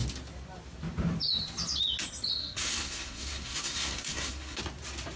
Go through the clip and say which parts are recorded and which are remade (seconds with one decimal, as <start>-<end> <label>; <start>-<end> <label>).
0.0-2.4 recorded; 2.4-4.6 remade; 4.6-5.2 recorded